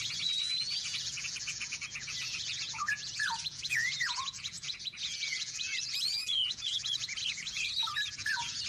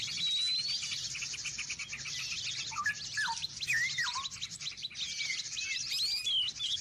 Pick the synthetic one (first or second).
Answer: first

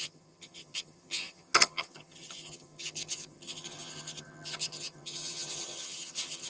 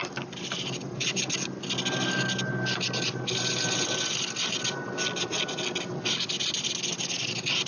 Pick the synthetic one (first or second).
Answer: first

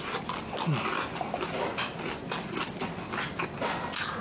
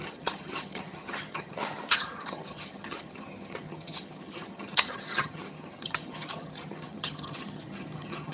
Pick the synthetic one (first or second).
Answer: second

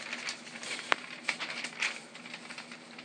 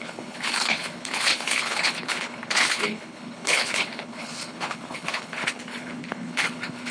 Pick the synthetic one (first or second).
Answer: second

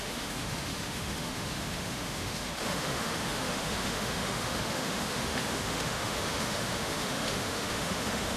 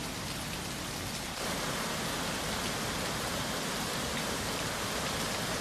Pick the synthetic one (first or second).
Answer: first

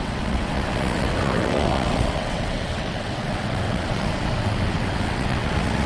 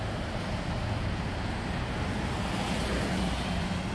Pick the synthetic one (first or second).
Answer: first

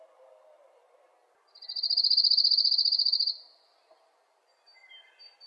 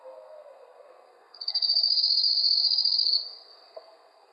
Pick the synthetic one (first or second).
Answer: second